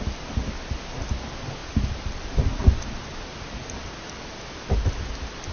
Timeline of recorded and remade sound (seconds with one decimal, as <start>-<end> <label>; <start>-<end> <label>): 0.0-5.5 recorded